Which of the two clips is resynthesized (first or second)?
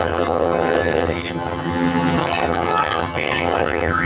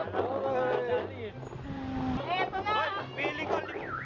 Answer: first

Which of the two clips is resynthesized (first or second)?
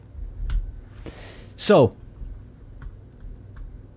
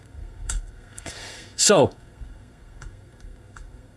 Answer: second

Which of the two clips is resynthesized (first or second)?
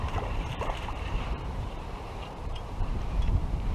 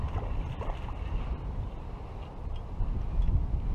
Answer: first